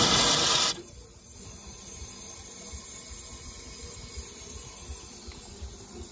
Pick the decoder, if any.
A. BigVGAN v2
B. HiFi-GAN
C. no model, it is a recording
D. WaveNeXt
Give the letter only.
C